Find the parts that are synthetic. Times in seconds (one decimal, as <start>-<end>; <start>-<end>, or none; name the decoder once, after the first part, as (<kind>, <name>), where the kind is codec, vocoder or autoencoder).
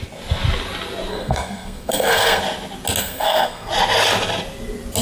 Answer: 1.1-2.4 (codec, SNAC); 3.0-3.7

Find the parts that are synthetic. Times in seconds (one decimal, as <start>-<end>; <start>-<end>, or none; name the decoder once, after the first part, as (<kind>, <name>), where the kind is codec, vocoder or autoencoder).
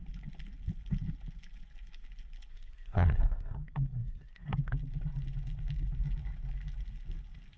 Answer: 2.5-4.7 (codec, SNAC)